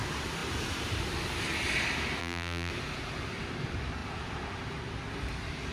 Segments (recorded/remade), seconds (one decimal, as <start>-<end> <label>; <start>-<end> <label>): 0.0-2.2 recorded; 2.2-2.7 remade; 2.7-5.7 recorded